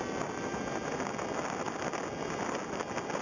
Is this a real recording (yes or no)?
yes